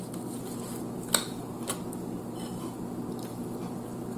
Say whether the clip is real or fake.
real